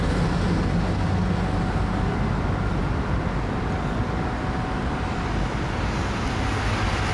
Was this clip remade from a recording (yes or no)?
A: no